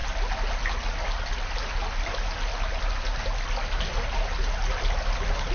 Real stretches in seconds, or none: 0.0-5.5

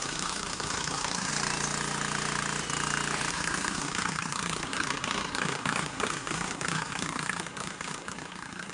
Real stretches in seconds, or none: 1.3-3.3

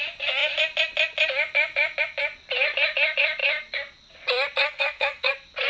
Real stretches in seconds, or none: 0.0-4.6; 5.3-5.7

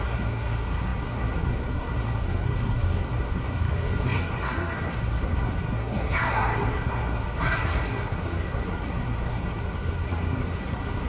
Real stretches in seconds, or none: none